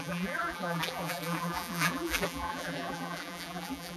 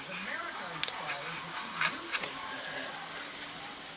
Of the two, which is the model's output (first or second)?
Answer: first